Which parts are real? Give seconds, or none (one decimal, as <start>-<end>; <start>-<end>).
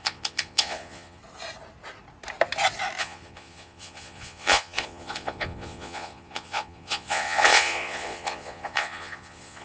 1.2-3.0